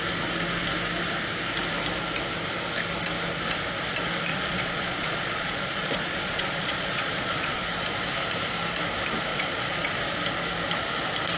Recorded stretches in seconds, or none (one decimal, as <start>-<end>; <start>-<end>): 0.0-4.3; 7.6-9.3; 9.9-11.4